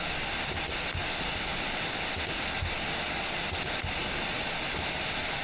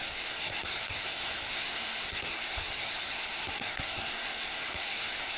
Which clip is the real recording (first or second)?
first